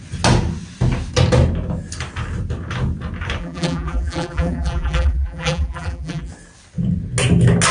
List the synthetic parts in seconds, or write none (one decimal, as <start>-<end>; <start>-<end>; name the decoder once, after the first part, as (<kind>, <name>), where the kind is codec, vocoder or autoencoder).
3.4-6.3 (vocoder, BigVGAN v2)